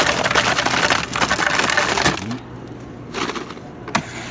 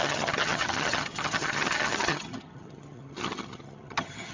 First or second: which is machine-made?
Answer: second